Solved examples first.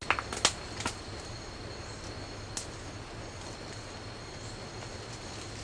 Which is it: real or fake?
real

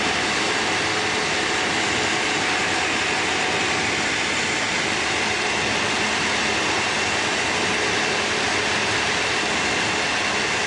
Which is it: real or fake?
real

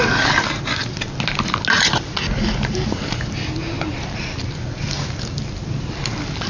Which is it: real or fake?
real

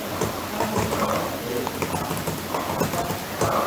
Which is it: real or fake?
real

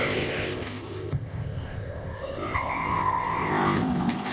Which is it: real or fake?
fake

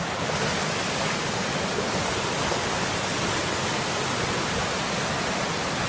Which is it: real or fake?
real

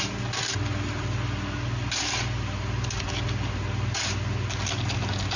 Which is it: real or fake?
real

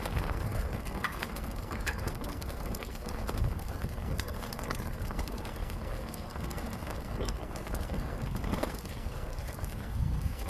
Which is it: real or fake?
fake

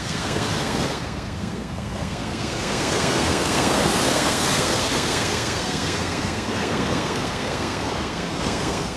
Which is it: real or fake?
fake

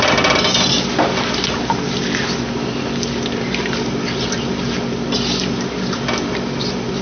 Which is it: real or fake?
real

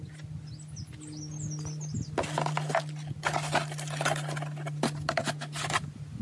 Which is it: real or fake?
real